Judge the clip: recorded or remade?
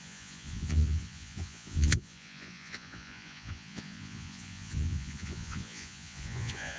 remade